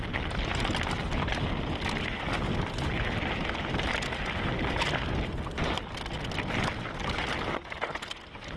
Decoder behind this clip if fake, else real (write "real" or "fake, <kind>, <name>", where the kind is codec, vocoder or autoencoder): real